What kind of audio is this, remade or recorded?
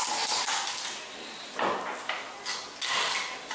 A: recorded